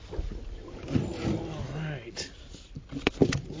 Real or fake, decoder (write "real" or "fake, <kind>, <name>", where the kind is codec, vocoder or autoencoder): real